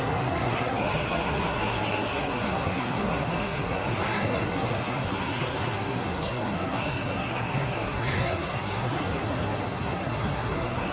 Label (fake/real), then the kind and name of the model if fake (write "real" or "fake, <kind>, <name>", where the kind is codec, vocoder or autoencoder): fake, codec, SNAC